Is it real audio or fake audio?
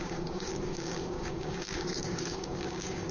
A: fake